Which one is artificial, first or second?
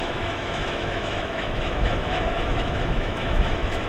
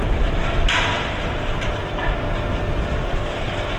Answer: first